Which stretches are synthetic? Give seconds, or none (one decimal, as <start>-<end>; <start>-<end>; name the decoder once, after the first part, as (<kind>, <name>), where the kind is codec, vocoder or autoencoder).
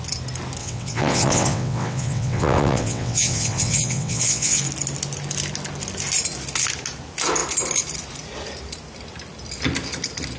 0.6-4.6 (vocoder, WaveNeXt)